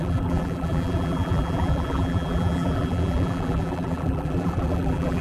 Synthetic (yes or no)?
yes